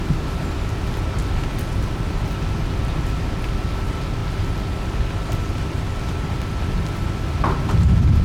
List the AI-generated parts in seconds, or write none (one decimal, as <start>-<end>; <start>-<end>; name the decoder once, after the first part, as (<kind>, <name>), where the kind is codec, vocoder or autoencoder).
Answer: none